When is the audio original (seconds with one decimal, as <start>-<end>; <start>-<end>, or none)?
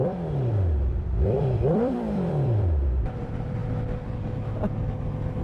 3.6-5.4